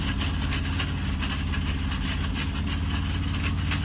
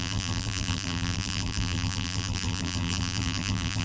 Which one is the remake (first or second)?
second